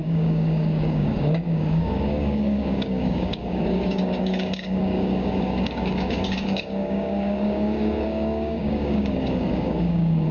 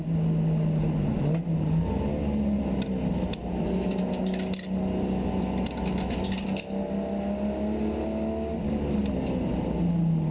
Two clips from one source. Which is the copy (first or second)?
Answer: first